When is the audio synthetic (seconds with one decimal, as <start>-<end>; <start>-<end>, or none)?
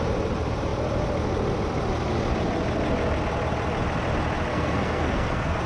4.5-5.7